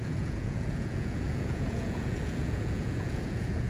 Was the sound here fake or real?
fake